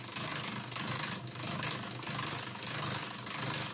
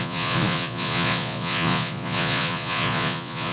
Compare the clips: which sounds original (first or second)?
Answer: first